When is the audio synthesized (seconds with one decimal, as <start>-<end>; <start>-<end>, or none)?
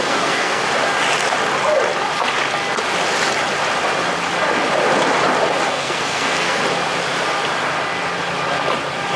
0.0-0.6; 5.7-6.6